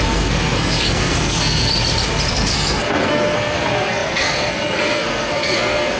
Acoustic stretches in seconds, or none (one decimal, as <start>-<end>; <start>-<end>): 1.7-2.3